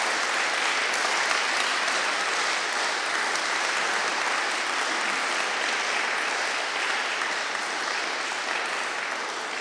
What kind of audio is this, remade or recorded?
recorded